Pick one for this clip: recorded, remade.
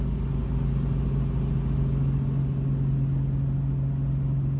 recorded